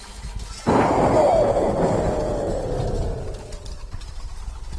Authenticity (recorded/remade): recorded